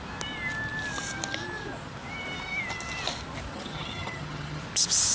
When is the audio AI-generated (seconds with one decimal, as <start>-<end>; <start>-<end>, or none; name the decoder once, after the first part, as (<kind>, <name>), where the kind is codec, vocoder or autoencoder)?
3.5-4.6 (vocoder, HiFi-GAN)